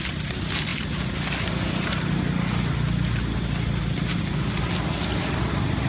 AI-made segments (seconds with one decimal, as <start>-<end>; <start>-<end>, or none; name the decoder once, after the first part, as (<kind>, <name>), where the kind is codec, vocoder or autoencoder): none